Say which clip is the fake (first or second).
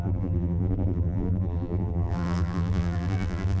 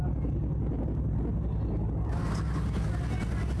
first